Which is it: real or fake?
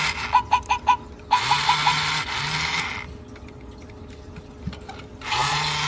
real